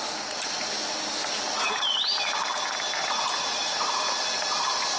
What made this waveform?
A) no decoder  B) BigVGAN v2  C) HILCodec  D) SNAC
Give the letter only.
A